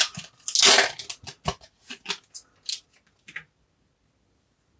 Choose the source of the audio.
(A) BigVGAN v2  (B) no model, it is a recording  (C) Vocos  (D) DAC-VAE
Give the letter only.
B